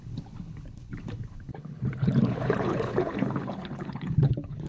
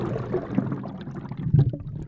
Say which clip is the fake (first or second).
first